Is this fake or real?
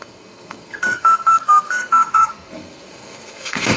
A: fake